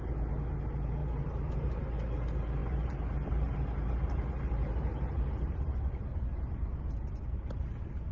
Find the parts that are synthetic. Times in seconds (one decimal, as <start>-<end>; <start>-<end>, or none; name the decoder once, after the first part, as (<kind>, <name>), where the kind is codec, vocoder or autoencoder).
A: 1.0-1.8 (vocoder, BigVGAN v2); 2.6-7.2